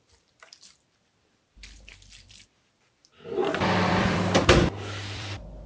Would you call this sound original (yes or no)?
no